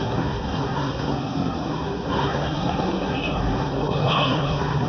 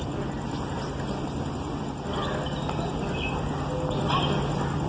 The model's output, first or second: first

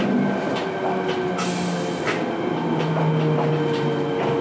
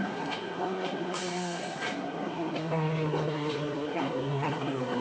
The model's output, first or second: second